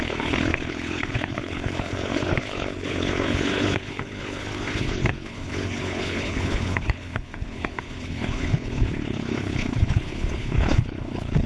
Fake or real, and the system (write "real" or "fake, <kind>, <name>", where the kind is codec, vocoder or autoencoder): fake, codec, HILCodec